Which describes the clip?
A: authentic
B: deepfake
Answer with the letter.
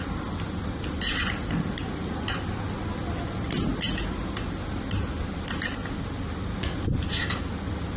A